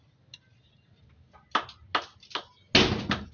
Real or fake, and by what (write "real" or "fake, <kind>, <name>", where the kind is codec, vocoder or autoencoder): real